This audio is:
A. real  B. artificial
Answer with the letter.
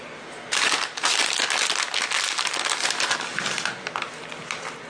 A